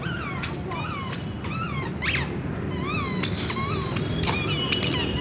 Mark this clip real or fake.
real